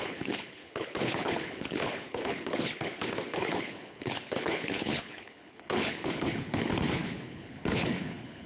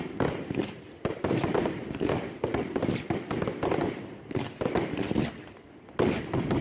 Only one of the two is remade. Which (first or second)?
first